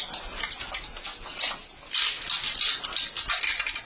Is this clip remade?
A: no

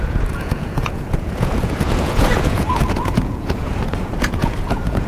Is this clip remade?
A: yes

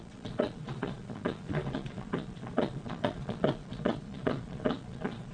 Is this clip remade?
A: yes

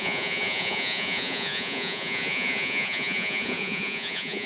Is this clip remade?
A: yes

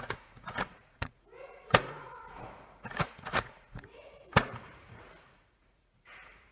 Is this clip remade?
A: yes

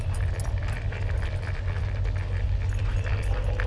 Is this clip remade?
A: no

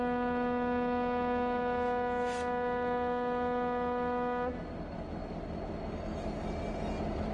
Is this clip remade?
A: no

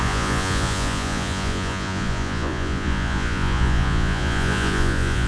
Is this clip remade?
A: yes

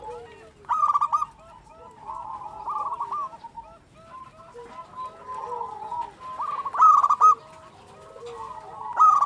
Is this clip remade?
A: no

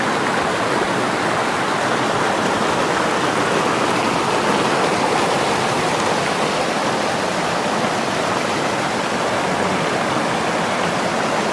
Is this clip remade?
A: no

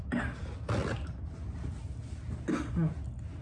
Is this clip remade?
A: no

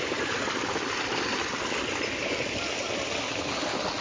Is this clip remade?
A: no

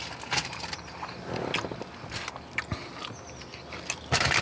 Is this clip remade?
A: no